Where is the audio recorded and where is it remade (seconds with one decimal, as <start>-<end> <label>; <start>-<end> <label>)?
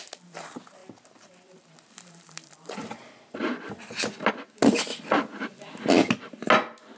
0.0-0.8 recorded; 0.8-4.3 remade; 4.3-7.0 recorded